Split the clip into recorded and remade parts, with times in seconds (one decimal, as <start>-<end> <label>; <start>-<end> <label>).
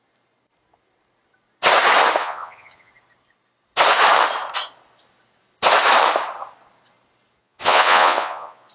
0.0-2.2 recorded; 2.2-2.9 remade; 2.9-7.4 recorded; 7.4-8.7 remade